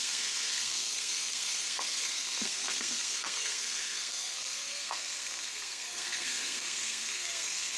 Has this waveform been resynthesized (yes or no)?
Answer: yes